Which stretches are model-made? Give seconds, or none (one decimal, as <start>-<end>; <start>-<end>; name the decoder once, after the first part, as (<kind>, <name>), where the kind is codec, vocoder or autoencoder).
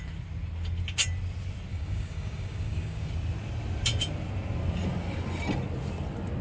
1.7-3.1 (codec, DAC)